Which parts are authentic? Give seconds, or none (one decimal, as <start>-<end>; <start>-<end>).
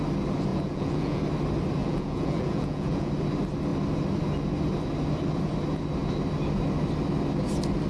0.0-0.5; 1.2-1.8; 3.1-7.9